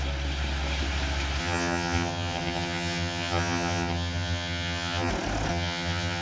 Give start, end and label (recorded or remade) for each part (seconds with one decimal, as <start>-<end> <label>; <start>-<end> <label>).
0.0-1.4 recorded; 1.4-5.1 remade; 5.1-5.5 recorded; 5.5-6.2 remade